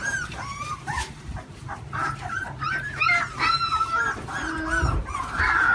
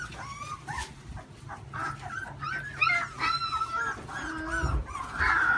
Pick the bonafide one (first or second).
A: second